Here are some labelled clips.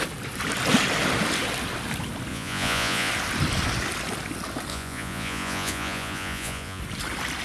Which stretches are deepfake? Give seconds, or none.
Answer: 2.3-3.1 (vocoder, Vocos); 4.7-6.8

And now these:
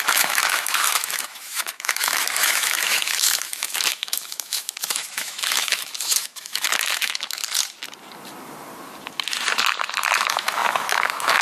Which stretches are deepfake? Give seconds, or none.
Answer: 0.0-7.4 (autoencoder, DAC-VAE); 10.2-11.4

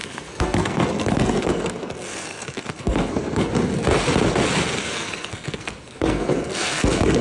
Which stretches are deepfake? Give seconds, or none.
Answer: 0.0-3.5 (codec, SNAC); 4.8-7.2

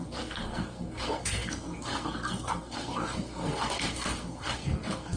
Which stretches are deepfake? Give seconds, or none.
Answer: 0.0-5.2 (codec, SNAC)

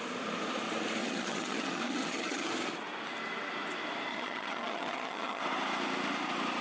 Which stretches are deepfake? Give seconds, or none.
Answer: 1.0-2.5 (vocoder, HiFi-GAN); 4.1-5.4